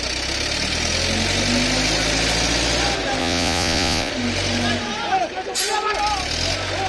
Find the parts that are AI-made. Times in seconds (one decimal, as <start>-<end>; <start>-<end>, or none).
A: 3.2-4.1